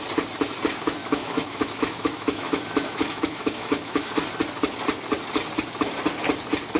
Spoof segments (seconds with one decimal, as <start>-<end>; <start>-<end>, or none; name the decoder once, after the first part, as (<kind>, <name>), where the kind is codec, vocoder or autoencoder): 1.0-4.1 (autoencoder, DAC-VAE)